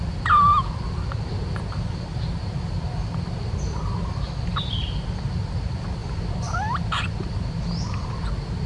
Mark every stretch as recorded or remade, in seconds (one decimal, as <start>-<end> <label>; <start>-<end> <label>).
0.0-8.7 recorded